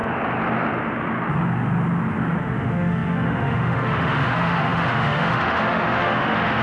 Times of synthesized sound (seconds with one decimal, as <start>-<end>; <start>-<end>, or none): 2.4-6.6